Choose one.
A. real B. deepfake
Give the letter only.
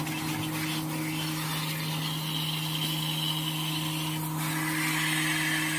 A